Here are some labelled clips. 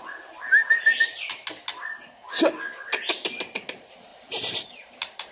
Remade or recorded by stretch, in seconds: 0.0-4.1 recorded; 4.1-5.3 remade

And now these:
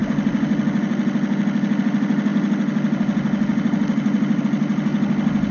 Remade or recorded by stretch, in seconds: 0.0-5.5 recorded

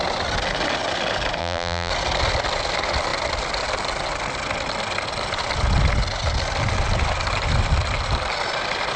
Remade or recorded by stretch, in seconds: 0.0-1.4 recorded; 1.4-1.9 remade; 1.9-9.0 recorded